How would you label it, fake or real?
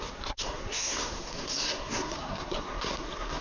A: fake